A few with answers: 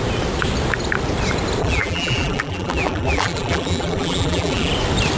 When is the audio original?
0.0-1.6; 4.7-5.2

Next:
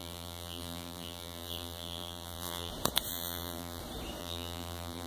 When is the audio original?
2.7-3.1; 3.8-4.2

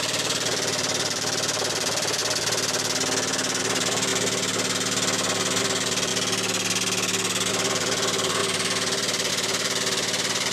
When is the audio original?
2.2-3.6; 4.1-5.6; 6.1-7.5

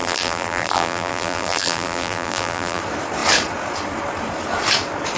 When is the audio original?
2.8-5.2